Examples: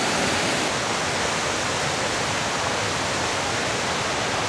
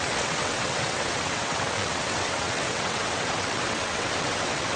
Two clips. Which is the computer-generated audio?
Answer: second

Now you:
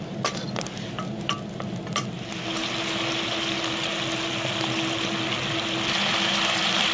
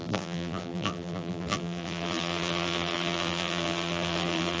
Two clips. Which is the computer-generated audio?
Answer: second